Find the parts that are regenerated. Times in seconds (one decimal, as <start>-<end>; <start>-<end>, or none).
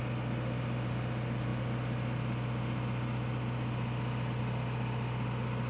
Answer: none